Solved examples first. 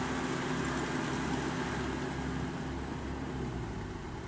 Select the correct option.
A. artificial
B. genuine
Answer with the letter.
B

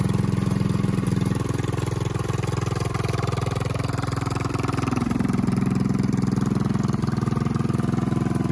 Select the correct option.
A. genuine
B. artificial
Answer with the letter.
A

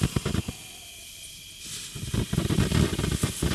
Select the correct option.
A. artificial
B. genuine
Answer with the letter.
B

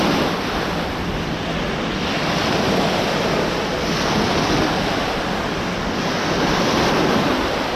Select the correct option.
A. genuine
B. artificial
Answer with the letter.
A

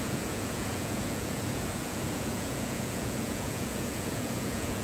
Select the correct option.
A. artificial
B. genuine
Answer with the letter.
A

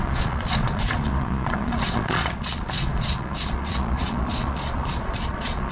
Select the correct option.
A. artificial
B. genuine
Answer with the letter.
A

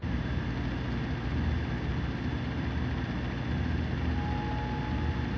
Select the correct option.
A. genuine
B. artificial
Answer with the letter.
A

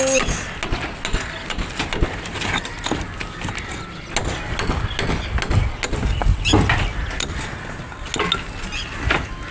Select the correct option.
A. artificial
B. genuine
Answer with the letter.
B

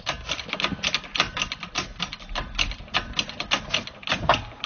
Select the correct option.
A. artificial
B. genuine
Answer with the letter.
B